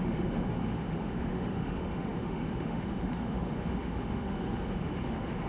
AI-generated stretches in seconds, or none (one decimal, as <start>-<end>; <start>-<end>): 0.0-5.5